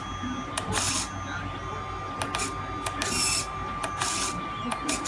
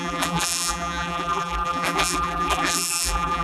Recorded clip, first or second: first